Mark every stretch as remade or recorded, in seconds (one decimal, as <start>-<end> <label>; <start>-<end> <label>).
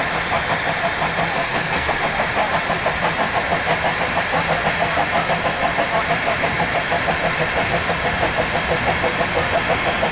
0.0-1.4 recorded; 1.4-2.0 remade; 2.0-10.1 recorded